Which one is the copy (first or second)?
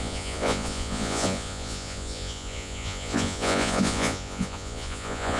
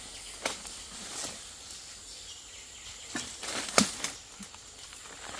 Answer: first